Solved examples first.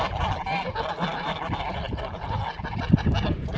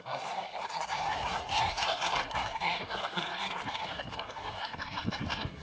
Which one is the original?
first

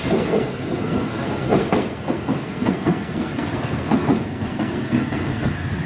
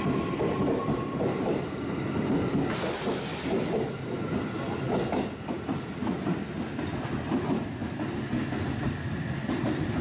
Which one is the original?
second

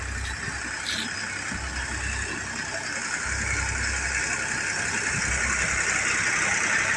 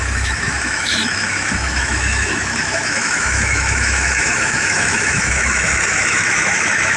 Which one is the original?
first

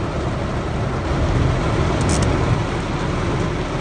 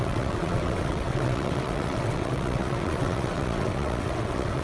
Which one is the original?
first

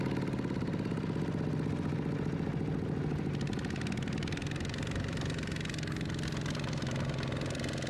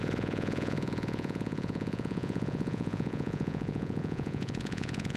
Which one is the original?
first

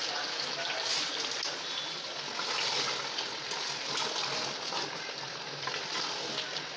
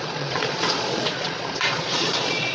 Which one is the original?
first